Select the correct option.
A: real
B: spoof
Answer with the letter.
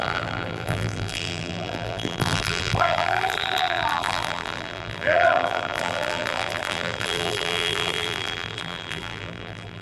B